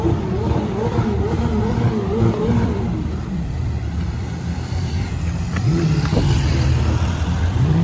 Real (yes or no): no